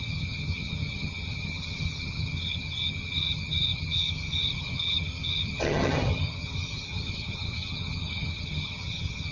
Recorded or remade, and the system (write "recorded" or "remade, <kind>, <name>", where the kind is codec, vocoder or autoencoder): remade, vocoder, HiFi-GAN